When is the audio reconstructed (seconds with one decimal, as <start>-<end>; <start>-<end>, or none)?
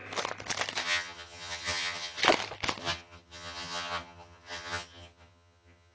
0.8-2.2; 2.8-5.9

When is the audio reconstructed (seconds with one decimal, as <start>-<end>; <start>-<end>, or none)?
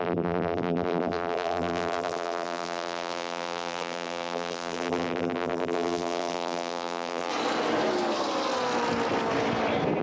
0.0-7.3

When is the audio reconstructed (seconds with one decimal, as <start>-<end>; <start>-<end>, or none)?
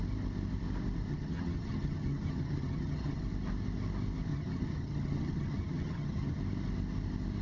1.1-3.2; 4.3-6.4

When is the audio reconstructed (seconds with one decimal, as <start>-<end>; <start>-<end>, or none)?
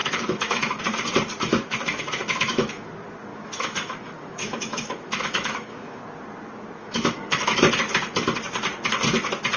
0.0-0.8; 1.5-2.9; 3.3-6.0; 6.8-7.6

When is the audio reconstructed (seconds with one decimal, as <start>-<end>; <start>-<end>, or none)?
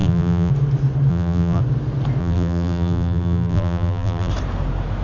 0.0-0.5; 1.1-1.6; 2.2-4.3